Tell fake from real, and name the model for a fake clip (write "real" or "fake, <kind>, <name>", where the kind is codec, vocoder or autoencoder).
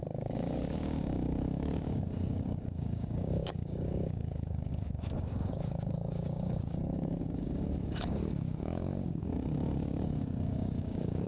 fake, codec, DAC